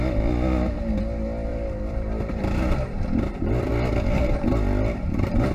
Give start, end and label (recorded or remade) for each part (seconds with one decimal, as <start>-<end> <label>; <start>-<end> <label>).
0.0-1.5 recorded; 1.5-3.7 remade; 3.7-5.5 recorded